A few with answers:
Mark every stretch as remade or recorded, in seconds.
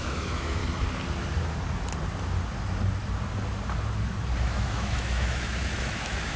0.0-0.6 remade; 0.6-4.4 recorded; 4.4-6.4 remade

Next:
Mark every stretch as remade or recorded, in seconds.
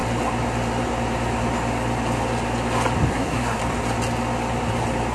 0.0-3.1 recorded; 3.1-3.6 remade; 3.6-5.1 recorded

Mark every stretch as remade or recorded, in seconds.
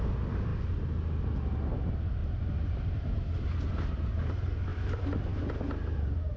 0.0-2.2 recorded; 2.2-3.1 remade; 3.1-4.7 recorded; 4.7-5.4 remade; 5.4-6.4 recorded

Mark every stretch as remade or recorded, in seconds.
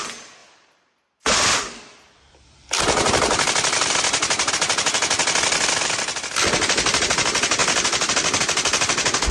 0.0-0.4 recorded; 0.4-4.5 remade; 4.5-7.6 recorded; 7.6-8.4 remade; 8.4-9.3 recorded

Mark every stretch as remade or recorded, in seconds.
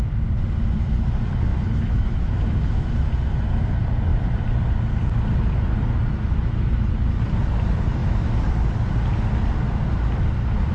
0.0-1.5 recorded; 1.5-3.1 remade; 3.1-8.0 recorded; 8.0-8.5 remade; 8.5-10.7 recorded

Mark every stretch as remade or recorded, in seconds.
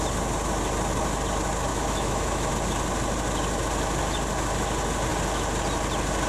0.0-1.7 recorded; 1.7-2.5 remade; 2.5-6.3 recorded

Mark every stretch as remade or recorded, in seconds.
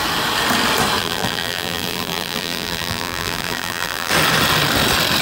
0.0-1.0 recorded; 1.0-4.1 remade; 4.1-5.2 recorded